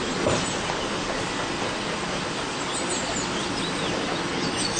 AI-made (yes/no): no